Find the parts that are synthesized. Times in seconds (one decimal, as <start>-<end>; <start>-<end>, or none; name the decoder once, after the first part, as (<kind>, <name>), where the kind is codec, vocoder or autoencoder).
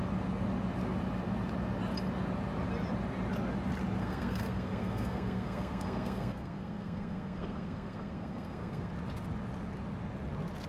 4.0-8.9 (codec, SNAC)